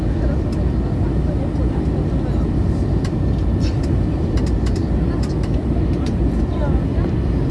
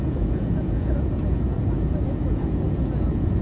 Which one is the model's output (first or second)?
second